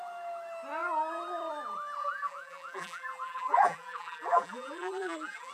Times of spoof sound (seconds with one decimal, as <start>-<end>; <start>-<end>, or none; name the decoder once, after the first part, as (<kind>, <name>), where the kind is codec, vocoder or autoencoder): 2.0-5.5 (vocoder, BigVGAN v2)